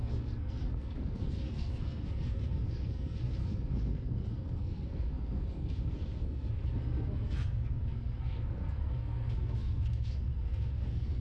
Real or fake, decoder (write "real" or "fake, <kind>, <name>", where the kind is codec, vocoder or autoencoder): fake, codec, SNAC